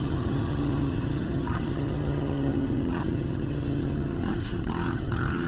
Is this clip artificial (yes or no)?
yes